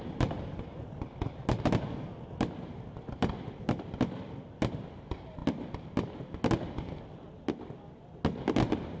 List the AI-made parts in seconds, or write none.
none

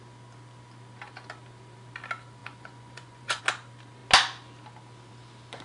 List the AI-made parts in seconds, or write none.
2.4-3.4 (vocoder, Vocos)

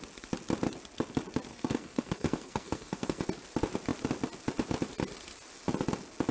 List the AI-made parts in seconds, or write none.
1.5-3.2 (codec, SNAC)

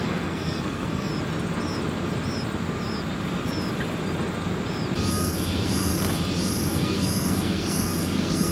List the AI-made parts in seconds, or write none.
0.0-1.1 (codec, SNAC); 5.1-5.9; 6.7-8.5

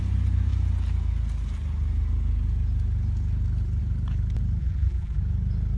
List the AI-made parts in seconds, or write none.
4.6-5.2 (vocoder, BigVGAN v2)

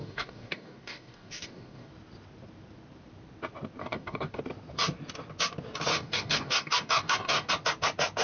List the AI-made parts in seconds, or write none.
0.0-1.9 (codec, DAC); 3.8-4.4; 5.9-7.5

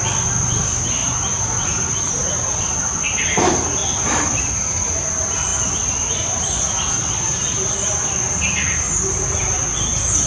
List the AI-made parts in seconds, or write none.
0.0-3.8 (vocoder, BigVGAN v2); 4.8-10.3